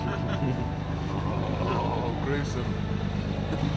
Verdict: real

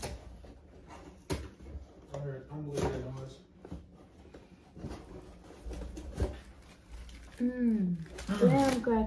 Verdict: real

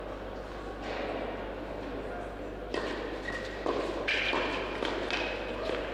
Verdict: real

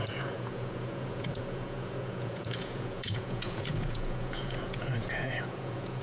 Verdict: fake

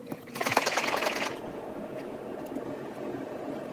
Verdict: fake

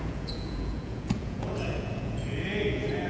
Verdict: fake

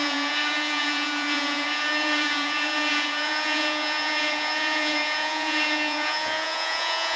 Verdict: fake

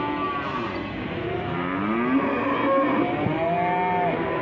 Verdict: real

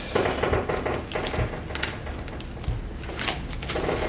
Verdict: real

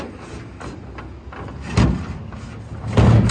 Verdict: real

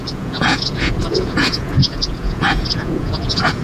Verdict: fake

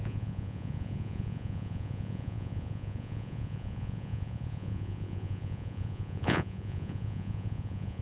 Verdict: fake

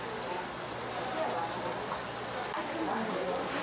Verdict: real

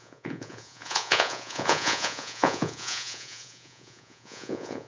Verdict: fake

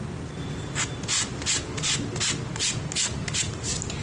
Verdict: real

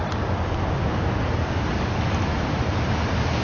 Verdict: real